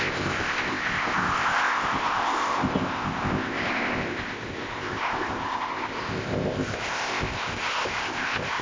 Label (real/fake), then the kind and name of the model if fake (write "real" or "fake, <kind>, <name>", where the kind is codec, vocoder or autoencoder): fake, codec, ZipCodec